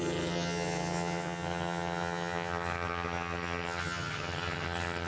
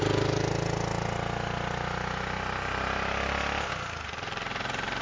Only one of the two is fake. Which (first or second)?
first